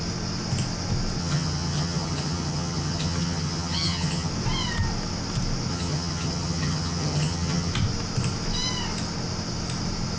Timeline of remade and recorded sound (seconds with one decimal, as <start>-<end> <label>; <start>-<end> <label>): 0.0-1.2 recorded; 1.2-4.3 remade; 4.3-5.7 recorded; 5.7-7.7 remade; 7.7-10.2 recorded